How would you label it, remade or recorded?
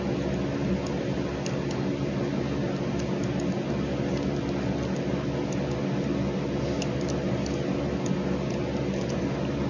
recorded